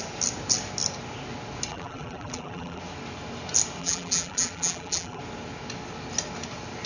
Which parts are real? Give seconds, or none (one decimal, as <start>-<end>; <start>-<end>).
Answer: 0.0-1.7; 2.8-3.8; 5.2-6.9